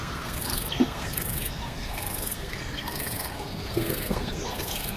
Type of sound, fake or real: fake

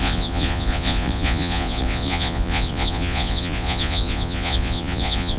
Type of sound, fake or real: fake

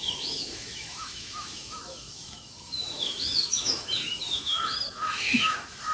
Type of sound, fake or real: fake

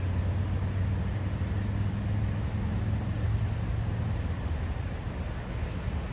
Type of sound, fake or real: real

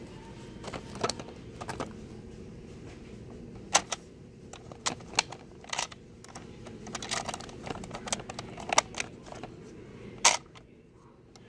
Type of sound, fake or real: real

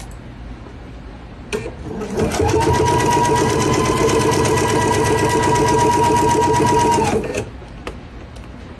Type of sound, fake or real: real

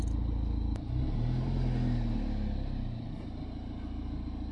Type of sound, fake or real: real